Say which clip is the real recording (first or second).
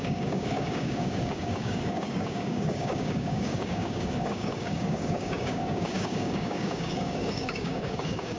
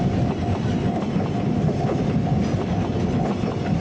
second